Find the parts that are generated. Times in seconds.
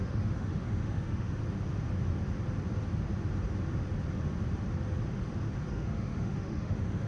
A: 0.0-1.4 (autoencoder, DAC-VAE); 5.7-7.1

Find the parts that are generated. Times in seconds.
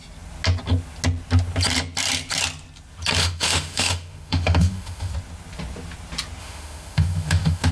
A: 3.2-5.1 (autoencoder, DAC-VAE); 6.4-7.7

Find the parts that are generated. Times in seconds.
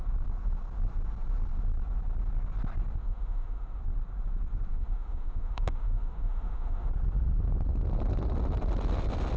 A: 3.0-3.8 (autoencoder, DAC-VAE); 4.7-6.9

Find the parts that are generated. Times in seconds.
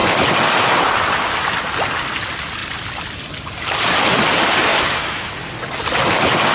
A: 4.7-5.3 (autoencoder, DAC-VAE)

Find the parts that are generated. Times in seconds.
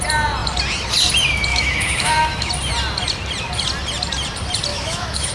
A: 1.5-2.5 (autoencoder, DAC-VAE); 4.7-5.3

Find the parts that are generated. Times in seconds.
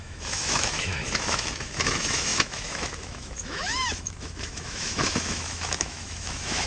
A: 0.0-6.7 (autoencoder, DAC-VAE)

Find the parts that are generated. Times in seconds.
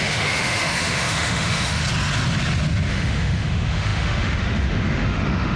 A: 0.0-1.8 (autoencoder, DAC-VAE); 2.9-5.6